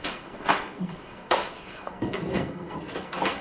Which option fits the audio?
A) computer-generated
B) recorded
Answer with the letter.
A